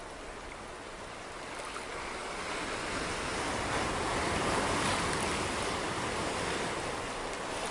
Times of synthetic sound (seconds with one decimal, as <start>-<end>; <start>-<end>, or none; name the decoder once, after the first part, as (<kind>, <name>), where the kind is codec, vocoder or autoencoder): 3.3-4.7 (vocoder, BigVGAN v2)